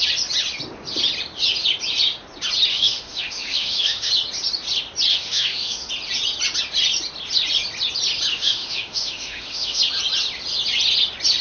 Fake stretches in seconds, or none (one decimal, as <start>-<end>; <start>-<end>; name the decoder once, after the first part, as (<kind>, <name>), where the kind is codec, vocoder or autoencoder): 2.7-4.1 (autoencoder, DAC-VAE); 5.1-5.9; 8.3-9.8